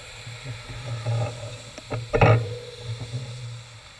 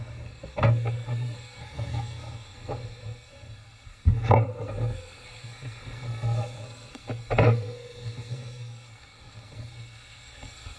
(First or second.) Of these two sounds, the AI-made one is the second